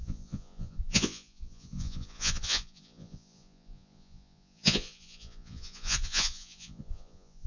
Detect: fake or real fake